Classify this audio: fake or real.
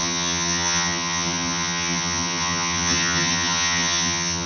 fake